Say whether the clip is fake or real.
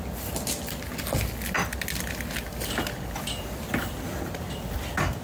real